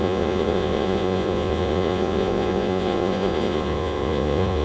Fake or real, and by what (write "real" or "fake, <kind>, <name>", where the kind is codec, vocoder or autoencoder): fake, vocoder, Vocos